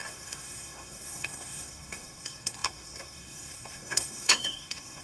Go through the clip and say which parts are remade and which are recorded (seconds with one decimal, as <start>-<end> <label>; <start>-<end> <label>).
0.0-5.0 remade